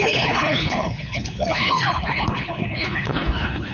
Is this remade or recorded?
remade